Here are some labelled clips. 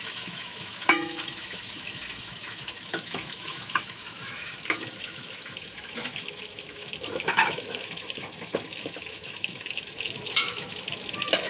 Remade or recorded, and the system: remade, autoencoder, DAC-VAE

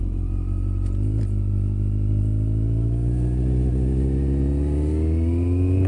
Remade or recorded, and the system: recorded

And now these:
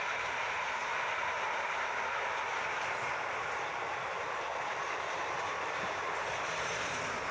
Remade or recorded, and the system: recorded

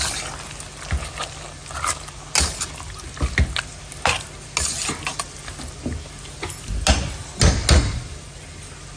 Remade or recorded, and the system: recorded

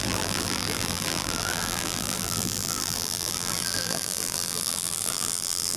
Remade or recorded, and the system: remade, vocoder, BigVGAN v2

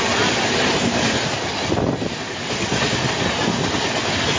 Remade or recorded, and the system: recorded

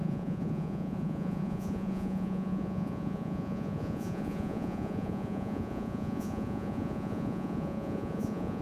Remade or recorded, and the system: remade, vocoder, Vocos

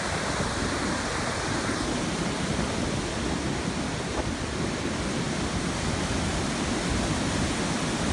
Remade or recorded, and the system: recorded